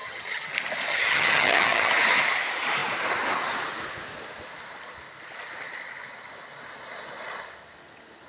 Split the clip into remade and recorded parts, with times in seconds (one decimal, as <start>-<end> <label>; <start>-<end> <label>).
0.0-0.5 remade; 0.5-0.9 recorded; 0.9-1.9 remade; 1.9-8.3 recorded